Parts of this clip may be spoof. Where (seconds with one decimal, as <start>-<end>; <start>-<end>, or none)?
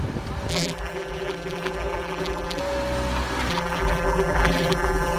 0.5-2.6; 3.5-5.2